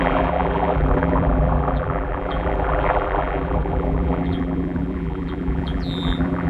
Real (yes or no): no